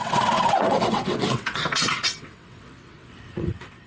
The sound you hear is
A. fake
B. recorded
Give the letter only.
A